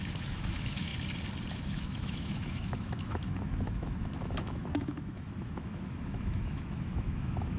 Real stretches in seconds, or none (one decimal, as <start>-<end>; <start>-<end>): 0.9-1.5